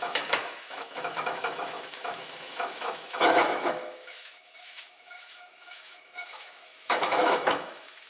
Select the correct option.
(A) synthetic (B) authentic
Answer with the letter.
A